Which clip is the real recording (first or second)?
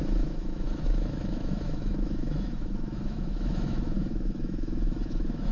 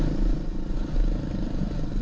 second